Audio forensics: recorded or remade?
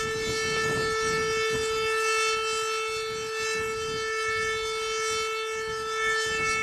recorded